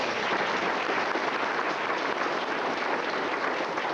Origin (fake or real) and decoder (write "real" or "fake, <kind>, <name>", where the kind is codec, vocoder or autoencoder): real